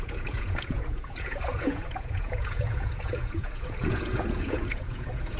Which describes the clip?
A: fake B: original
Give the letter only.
A